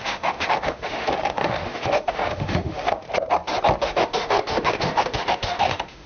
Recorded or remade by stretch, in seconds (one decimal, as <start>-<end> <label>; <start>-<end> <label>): 0.0-3.0 remade; 3.0-3.8 recorded; 3.8-6.1 remade